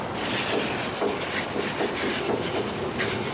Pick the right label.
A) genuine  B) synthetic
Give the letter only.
A